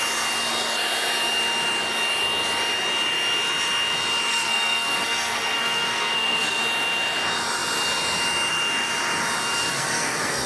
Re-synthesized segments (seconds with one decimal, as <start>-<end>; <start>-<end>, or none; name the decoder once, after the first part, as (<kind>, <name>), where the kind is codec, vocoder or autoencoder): 4.3-6.6 (codec, SNAC); 9.7-10.5